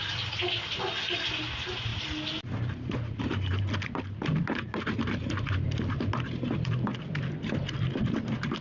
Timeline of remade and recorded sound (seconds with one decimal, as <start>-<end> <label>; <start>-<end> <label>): 0.0-8.6 recorded